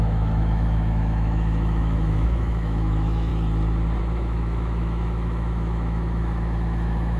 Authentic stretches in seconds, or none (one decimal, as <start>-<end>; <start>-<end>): 3.3-4.0